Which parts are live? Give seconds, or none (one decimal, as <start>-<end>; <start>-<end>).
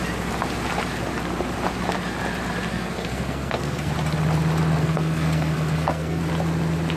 0.0-2.7; 3.9-4.8; 6.2-7.0